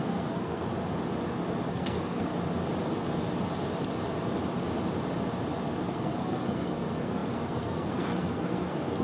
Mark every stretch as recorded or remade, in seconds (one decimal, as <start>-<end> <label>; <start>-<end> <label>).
0.0-0.7 remade; 0.7-1.7 recorded; 1.7-2.3 remade; 2.3-5.8 recorded; 5.8-9.0 remade